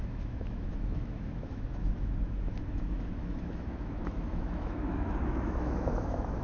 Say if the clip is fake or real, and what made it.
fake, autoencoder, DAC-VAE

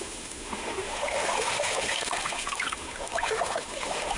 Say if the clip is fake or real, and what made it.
fake, autoencoder, DAC-VAE